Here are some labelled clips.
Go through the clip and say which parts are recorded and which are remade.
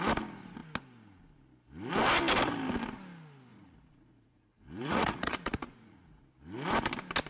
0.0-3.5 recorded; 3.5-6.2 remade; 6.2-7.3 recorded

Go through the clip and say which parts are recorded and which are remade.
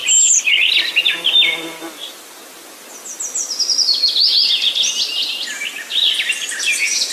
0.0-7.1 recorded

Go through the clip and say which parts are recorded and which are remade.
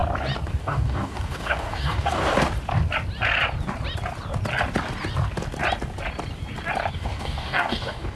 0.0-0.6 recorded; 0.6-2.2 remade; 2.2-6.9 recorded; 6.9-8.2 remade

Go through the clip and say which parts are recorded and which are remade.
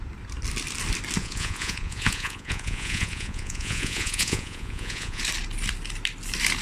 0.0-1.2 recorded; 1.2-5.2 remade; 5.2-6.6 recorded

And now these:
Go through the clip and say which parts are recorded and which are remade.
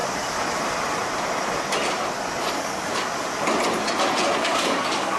0.0-2.5 recorded; 2.5-2.9 remade; 2.9-4.4 recorded; 4.4-5.2 remade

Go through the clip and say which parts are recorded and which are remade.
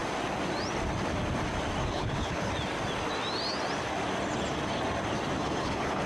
0.0-1.8 recorded; 1.8-2.5 remade; 2.5-5.4 recorded; 5.4-6.1 remade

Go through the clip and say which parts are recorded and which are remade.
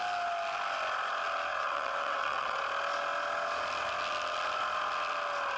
0.0-1.5 recorded; 1.5-2.6 remade; 2.6-5.6 recorded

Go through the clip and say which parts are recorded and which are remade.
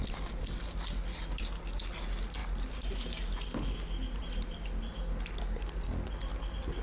0.0-6.8 recorded